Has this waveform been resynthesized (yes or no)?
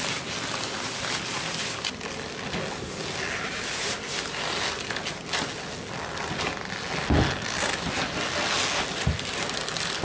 no